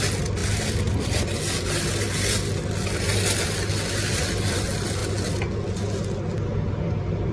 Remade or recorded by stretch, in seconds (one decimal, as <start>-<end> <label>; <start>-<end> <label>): 0.0-7.3 recorded